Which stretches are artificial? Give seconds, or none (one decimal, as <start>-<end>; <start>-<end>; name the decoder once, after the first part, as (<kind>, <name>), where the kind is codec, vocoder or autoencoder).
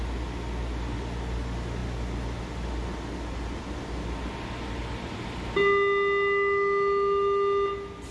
none